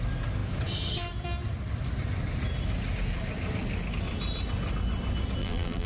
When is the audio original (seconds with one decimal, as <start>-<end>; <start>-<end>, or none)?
0.0-5.4